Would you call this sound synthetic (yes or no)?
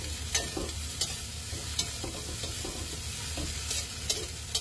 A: no